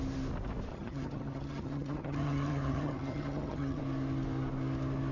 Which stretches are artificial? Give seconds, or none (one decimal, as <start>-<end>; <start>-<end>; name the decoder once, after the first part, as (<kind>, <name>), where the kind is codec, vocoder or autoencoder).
0.7-3.8 (vocoder, HiFi-GAN)